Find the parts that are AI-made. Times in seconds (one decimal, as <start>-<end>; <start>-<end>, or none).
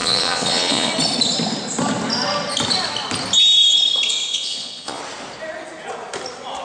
0.0-0.9; 4.3-5.0